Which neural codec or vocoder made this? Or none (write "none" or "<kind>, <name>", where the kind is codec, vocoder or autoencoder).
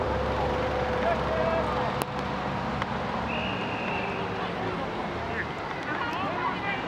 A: none